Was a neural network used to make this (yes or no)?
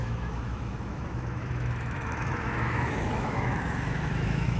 yes